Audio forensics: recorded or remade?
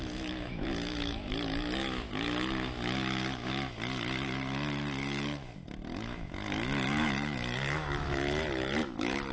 remade